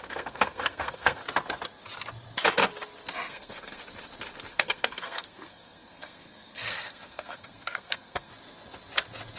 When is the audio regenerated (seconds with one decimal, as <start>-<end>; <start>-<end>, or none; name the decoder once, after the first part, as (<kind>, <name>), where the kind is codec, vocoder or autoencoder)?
0.0-1.2 (codec, SNAC); 3.3-3.8; 4.5-8.3